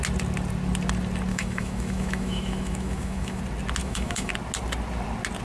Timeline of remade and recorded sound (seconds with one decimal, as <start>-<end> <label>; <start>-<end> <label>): 0.0-1.3 recorded; 1.3-3.4 remade; 3.4-3.8 recorded; 3.8-4.3 remade; 4.3-5.4 recorded